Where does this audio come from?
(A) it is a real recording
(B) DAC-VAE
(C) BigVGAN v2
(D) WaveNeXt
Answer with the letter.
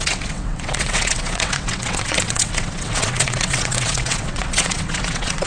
D